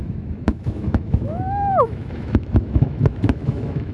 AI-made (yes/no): yes